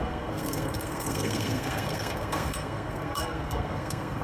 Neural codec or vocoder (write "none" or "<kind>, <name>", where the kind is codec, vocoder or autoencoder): codec, SNAC